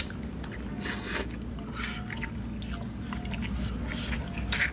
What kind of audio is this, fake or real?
real